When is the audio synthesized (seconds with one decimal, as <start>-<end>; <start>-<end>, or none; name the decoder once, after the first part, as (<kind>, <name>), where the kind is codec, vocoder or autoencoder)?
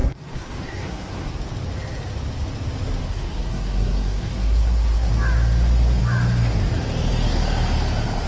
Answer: 0.0-1.3 (codec, SNAC); 3.0-5.1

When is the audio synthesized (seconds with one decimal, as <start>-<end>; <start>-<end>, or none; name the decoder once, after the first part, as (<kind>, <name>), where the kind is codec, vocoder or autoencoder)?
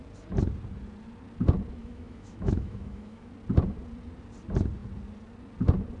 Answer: 1.8-3.3 (autoencoder, DAC-VAE)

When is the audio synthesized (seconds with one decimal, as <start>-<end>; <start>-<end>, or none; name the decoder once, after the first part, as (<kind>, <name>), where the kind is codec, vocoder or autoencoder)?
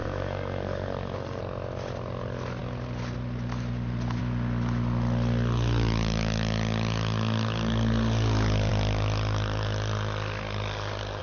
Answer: 0.0-1.4 (codec, SNAC)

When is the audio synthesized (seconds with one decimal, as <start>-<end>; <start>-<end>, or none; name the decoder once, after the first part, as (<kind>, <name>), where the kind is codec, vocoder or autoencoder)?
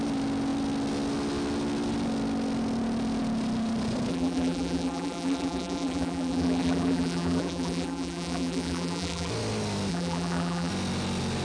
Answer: 4.1-9.3 (vocoder, BigVGAN v2); 9.9-10.7